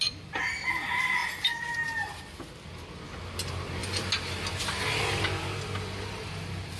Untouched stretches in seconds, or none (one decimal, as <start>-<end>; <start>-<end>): 0.0-6.8